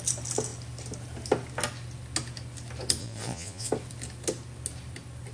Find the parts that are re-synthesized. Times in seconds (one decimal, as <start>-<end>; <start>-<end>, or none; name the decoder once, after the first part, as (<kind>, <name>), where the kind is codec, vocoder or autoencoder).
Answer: 3.0-3.7 (vocoder, Vocos)

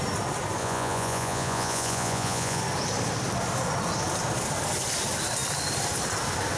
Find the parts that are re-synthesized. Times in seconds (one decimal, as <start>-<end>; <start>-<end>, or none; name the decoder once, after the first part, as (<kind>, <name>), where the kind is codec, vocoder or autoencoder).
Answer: 0.6-2.6 (vocoder, Vocos)